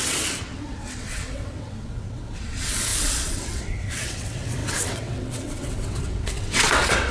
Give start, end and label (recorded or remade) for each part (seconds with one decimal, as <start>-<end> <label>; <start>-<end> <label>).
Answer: 0.0-7.1 remade